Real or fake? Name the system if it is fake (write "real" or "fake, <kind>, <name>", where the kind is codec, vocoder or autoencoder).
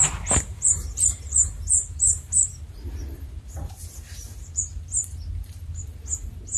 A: fake, vocoder, BigVGAN v2